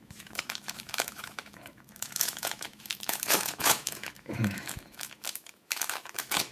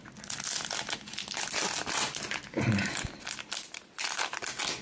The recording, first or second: second